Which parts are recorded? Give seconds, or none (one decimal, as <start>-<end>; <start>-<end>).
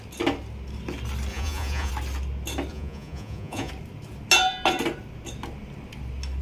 0.0-1.3; 1.9-2.7; 3.7-6.4